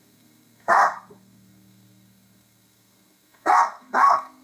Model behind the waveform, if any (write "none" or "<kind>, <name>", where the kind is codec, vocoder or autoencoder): codec, SNAC